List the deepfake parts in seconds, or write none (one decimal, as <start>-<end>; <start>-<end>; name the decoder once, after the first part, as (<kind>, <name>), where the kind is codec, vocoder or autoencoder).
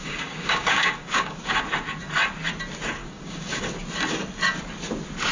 0.0-1.6 (codec, DAC); 3.0-3.6